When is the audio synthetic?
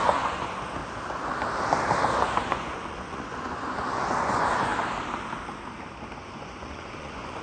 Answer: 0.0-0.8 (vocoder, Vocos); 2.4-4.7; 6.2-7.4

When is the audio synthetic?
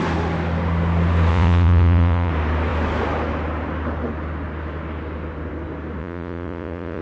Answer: 1.3-2.3 (vocoder, Vocos); 6.0-7.0